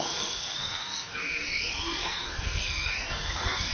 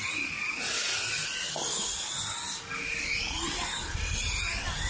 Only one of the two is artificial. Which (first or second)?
first